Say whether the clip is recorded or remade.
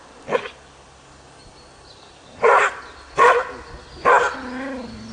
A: recorded